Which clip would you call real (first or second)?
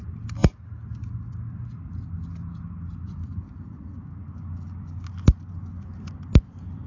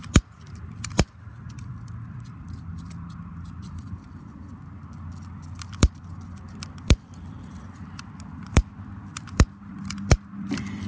first